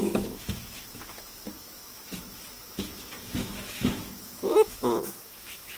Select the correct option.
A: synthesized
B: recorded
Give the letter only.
A